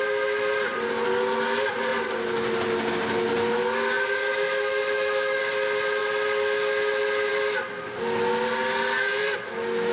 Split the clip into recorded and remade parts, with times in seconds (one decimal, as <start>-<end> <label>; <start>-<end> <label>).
0.0-4.2 recorded; 4.2-5.4 remade; 5.4-9.9 recorded